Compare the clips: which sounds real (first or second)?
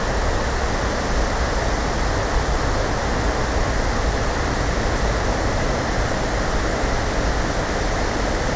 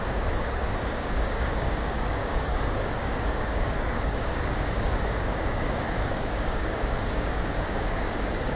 first